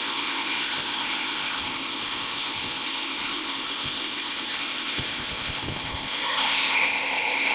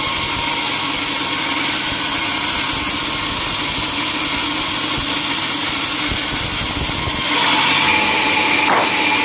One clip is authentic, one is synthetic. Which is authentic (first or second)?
second